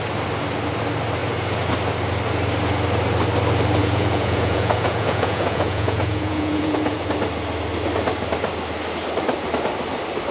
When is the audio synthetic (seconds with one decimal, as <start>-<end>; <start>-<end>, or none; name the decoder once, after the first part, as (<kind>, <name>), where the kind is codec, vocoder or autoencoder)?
1.2-1.7 (vocoder, Vocos); 3.8-7.0